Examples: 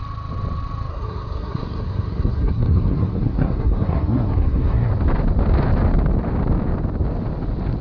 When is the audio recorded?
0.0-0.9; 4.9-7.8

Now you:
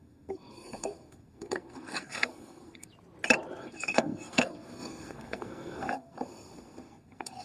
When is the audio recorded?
2.9-3.6

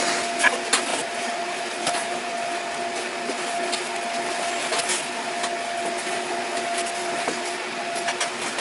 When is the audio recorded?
0.0-0.9; 2.3-8.6